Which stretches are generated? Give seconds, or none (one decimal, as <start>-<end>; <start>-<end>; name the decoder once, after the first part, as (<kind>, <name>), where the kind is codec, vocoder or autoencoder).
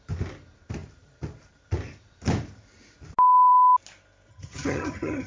4.3-5.3 (vocoder, HiFi-GAN)